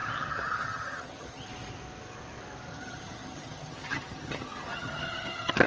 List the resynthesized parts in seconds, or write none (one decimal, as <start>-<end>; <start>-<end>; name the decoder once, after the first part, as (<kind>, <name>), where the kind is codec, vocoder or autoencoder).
0.0-1.5 (vocoder, HiFi-GAN); 2.7-5.7